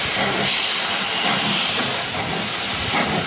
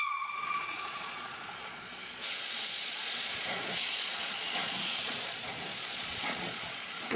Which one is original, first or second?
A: first